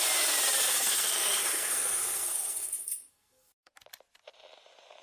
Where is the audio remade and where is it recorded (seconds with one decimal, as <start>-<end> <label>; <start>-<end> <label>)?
0.0-0.7 recorded; 0.7-3.7 remade; 3.7-5.0 recorded